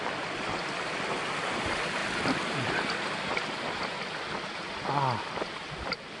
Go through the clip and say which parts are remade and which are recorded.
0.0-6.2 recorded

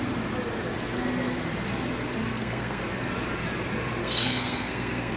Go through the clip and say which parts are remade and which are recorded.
0.0-2.3 recorded; 2.3-2.8 remade; 2.8-4.0 recorded; 4.0-5.2 remade

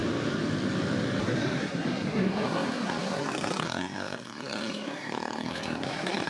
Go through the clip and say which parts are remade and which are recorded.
0.0-1.2 recorded; 1.2-6.3 remade